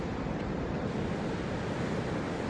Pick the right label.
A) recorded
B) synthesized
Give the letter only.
A